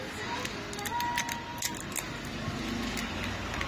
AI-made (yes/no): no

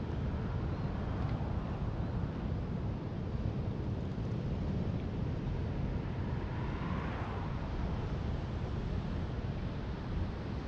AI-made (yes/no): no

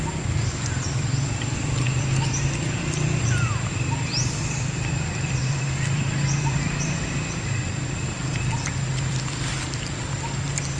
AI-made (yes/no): yes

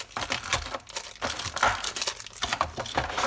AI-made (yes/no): no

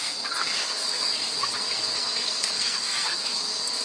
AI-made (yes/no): yes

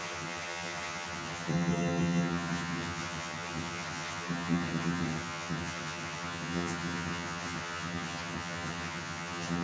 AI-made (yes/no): yes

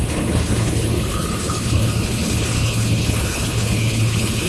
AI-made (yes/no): yes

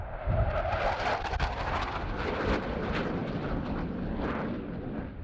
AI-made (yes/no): no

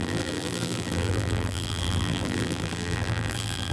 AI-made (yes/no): yes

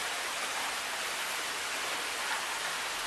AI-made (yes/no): no